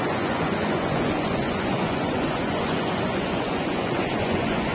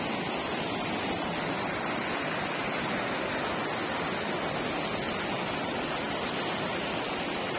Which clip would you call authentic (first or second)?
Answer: second